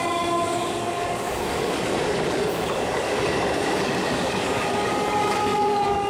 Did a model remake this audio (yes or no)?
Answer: yes